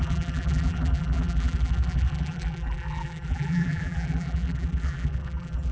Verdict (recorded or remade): remade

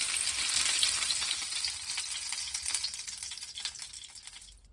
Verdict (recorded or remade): recorded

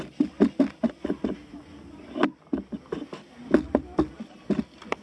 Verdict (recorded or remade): recorded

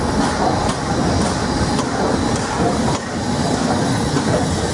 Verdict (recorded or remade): recorded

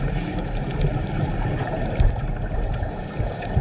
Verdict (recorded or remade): remade